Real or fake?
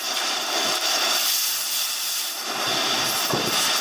real